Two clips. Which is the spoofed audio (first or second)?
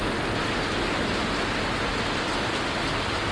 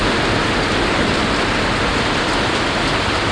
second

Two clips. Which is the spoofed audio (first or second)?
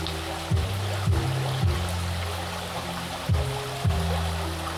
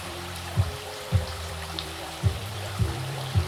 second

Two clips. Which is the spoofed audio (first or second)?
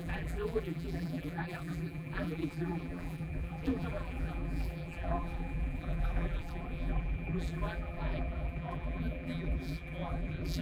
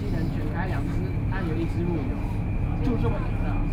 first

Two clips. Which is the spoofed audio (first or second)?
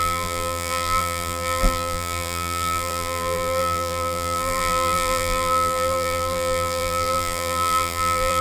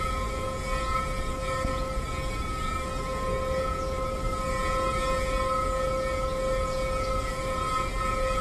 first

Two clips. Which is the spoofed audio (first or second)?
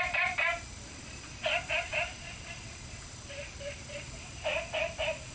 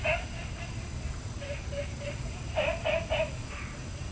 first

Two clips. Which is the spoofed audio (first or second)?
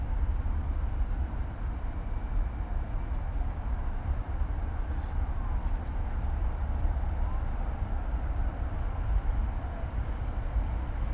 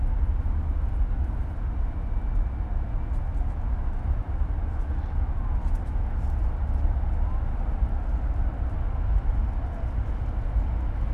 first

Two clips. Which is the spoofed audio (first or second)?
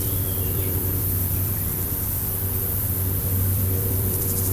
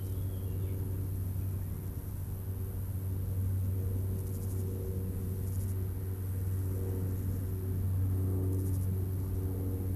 first